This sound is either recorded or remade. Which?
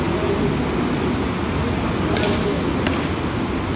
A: recorded